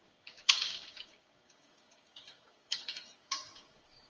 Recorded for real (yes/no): no